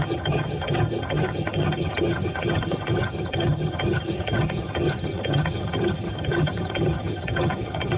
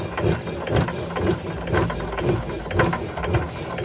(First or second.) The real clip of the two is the second